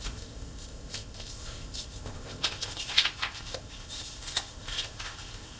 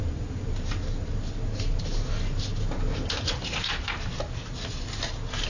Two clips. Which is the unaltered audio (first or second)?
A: second